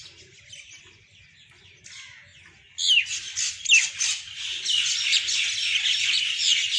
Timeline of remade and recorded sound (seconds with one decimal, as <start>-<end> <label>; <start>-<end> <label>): 0.0-6.8 recorded

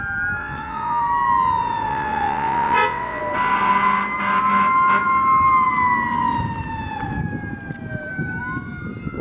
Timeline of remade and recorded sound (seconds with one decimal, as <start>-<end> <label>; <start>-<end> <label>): 0.0-0.4 recorded; 0.4-1.0 remade; 1.0-1.9 recorded; 1.9-3.2 remade; 3.2-9.2 recorded

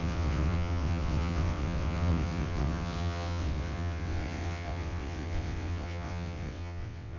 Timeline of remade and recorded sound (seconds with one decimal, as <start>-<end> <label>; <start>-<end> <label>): 0.0-7.2 remade